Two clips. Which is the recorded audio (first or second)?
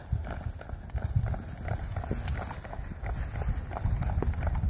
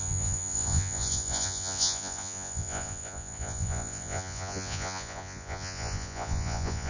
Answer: first